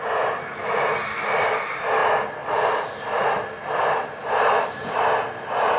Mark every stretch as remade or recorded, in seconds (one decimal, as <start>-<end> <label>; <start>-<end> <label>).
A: 0.0-5.8 recorded

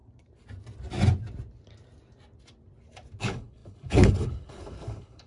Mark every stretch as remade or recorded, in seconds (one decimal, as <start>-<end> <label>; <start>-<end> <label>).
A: 0.0-3.2 recorded; 3.2-5.3 remade